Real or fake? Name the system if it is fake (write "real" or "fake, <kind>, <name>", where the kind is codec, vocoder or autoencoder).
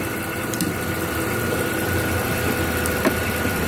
real